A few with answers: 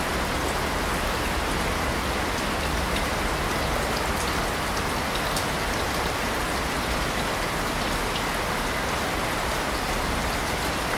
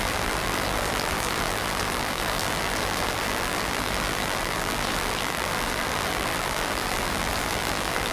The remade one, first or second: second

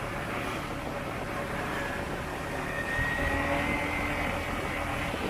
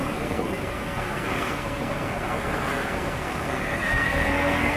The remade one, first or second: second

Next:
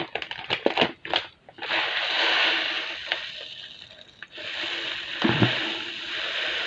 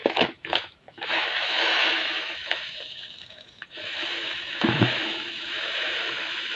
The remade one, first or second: second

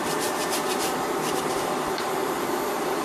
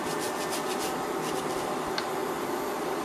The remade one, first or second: first